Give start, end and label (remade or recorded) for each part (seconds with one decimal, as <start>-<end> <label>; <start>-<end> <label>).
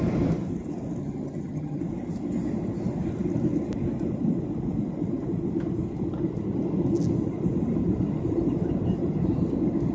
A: 0.0-1.0 recorded; 1.0-1.8 remade; 1.8-9.9 recorded